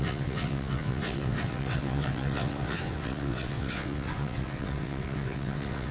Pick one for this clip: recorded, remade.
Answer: remade